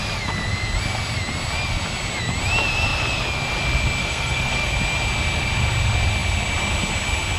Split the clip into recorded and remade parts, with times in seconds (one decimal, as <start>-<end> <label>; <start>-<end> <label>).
0.0-4.0 recorded; 4.0-4.7 remade; 4.7-7.4 recorded